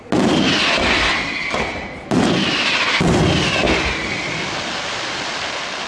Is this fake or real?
real